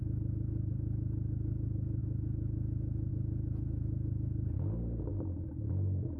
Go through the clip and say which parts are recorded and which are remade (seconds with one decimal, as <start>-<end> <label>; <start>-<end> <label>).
0.0-6.2 recorded